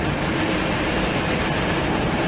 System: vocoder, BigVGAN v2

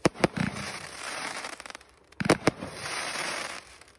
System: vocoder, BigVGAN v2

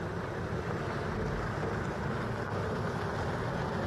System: none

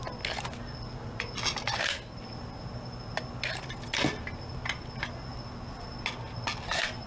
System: none